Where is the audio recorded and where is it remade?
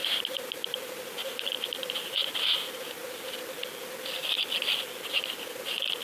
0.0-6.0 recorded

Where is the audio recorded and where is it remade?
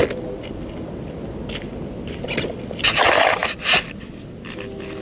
0.0-5.0 recorded